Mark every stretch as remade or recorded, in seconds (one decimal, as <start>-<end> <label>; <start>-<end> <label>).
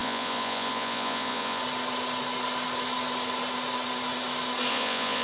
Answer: 0.0-1.6 remade; 1.6-4.7 recorded; 4.7-5.2 remade